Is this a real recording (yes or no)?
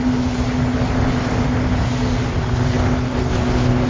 yes